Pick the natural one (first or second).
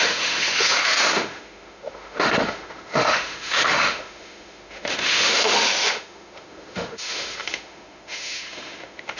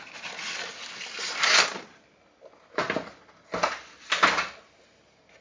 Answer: second